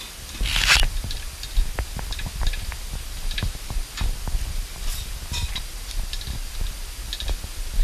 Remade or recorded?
recorded